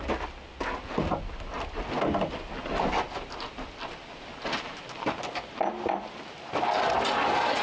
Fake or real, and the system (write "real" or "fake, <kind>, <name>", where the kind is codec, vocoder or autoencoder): real